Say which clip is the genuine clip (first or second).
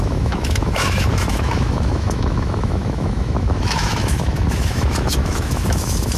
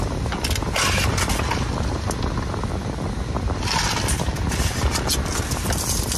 second